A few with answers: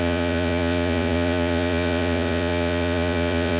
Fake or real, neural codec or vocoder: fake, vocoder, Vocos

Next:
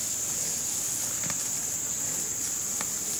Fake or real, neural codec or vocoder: real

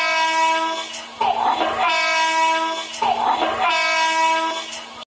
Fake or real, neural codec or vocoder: real